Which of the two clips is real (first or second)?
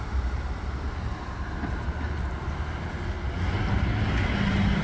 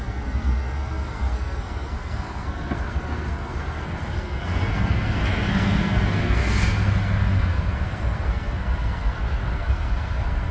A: first